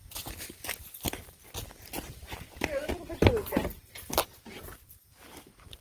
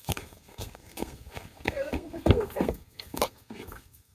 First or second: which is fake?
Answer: second